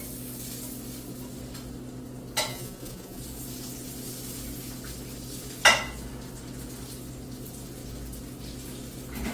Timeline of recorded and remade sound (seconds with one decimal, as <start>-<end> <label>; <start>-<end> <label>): 0.0-2.5 recorded; 2.5-3.2 remade; 3.2-9.3 recorded